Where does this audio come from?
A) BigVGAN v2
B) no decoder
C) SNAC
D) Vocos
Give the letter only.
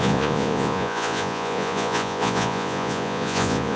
D